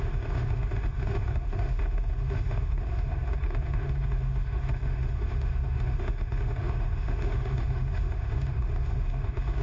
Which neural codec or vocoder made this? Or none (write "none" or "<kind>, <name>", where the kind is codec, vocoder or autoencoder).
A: autoencoder, DAC-VAE